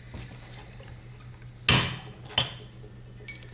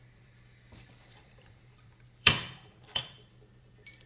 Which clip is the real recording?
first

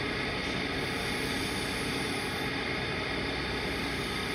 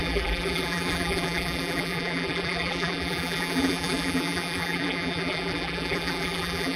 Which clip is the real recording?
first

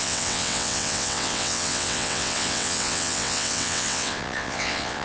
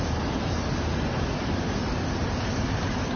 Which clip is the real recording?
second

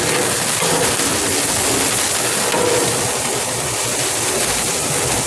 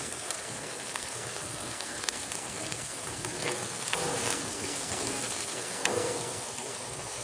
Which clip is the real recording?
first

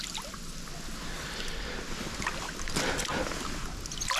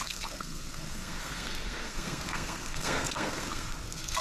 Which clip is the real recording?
first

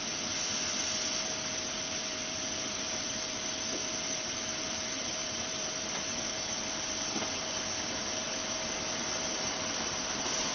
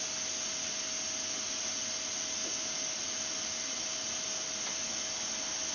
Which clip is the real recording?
second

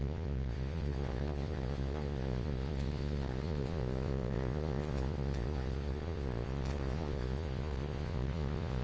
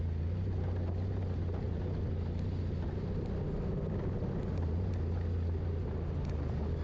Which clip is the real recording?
second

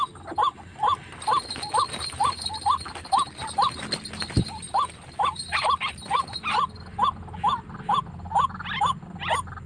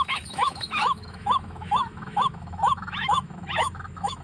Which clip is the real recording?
first